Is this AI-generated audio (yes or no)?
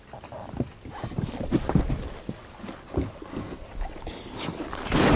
no